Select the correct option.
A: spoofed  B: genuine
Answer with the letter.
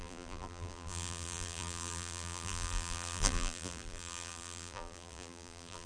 A